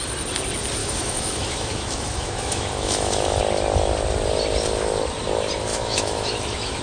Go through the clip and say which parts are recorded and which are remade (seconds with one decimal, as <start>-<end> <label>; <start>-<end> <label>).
0.0-0.8 recorded; 0.8-3.4 remade; 3.4-5.7 recorded; 5.7-6.8 remade